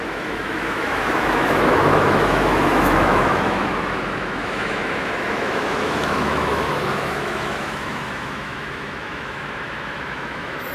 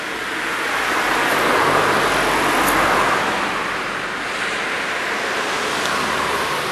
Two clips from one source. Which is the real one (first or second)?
second